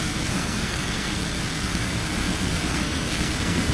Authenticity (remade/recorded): remade